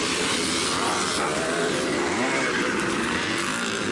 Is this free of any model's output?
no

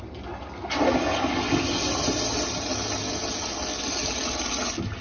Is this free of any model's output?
yes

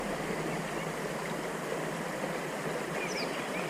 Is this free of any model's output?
yes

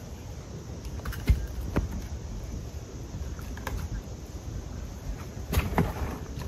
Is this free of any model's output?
yes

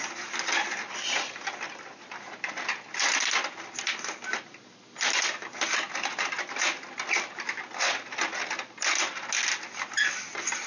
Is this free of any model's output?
yes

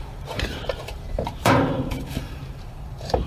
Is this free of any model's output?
no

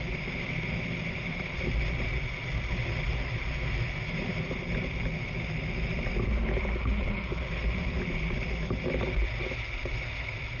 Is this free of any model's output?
yes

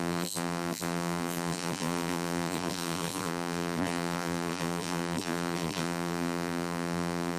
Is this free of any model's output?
no